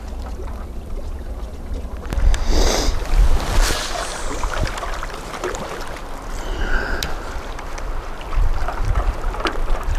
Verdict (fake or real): real